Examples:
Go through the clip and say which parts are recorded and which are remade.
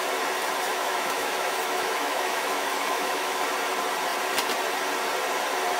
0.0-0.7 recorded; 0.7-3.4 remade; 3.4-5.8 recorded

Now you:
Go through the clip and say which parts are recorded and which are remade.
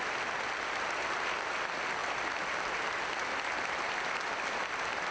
0.0-5.1 recorded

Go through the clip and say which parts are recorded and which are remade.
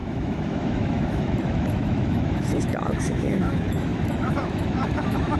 0.0-5.4 remade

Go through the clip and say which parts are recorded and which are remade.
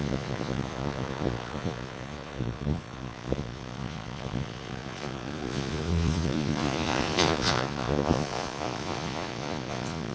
0.0-10.1 remade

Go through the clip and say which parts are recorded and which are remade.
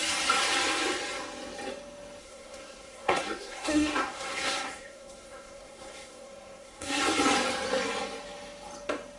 0.0-2.2 recorded; 2.2-7.0 remade; 7.0-9.2 recorded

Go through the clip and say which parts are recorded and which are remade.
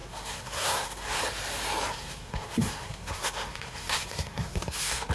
0.0-1.2 remade; 1.2-1.9 recorded; 1.9-5.1 remade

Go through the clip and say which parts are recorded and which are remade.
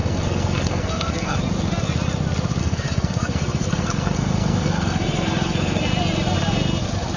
0.0-1.4 remade; 1.4-2.6 recorded; 2.6-5.8 remade; 5.8-7.2 recorded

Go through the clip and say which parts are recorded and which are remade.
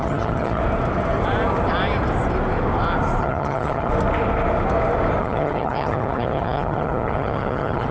0.0-0.6 remade; 0.6-3.2 recorded; 3.2-3.9 remade; 3.9-5.2 recorded; 5.2-7.9 remade